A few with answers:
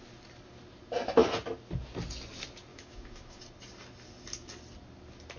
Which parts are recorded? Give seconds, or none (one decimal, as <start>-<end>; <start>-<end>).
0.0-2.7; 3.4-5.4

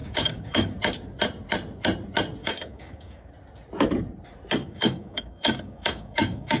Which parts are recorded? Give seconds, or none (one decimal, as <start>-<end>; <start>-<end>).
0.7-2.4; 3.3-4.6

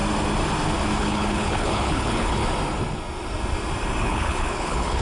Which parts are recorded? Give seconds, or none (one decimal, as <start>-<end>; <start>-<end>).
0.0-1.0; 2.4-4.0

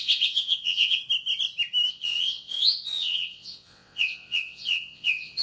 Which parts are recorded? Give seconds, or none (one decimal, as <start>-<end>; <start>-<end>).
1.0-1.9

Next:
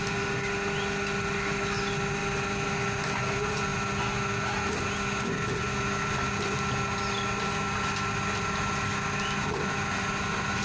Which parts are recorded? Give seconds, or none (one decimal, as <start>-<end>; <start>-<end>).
0.0-10.6